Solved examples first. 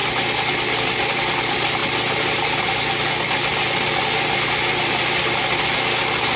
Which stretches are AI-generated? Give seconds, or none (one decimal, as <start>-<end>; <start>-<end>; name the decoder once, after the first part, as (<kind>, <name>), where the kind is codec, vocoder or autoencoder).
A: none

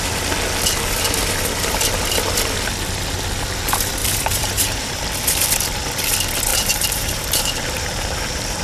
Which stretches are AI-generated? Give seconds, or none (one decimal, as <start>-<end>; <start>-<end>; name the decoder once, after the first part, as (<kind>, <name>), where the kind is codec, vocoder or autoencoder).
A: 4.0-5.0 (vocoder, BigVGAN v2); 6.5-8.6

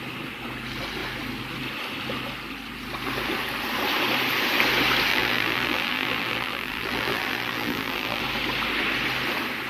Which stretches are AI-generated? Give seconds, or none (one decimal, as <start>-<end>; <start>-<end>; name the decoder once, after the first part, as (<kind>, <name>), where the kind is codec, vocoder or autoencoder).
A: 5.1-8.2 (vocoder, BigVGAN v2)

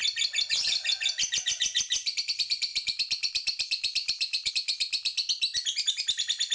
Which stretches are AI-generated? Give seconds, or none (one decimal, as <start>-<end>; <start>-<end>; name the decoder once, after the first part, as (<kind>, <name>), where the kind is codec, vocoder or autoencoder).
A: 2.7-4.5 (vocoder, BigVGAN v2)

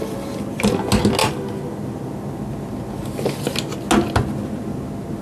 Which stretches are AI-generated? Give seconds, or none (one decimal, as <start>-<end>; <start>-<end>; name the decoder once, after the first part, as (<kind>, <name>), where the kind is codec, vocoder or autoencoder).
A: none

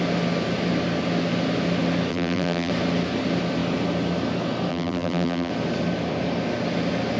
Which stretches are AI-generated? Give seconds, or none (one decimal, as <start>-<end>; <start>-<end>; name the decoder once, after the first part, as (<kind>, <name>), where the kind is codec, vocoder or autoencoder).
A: 2.1-2.7 (vocoder, BigVGAN v2); 4.7-5.5

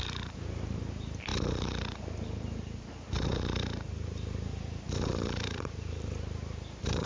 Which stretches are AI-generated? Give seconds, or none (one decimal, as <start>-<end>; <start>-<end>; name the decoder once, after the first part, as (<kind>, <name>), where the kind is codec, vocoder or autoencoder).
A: 0.0-7.1 (vocoder, BigVGAN v2)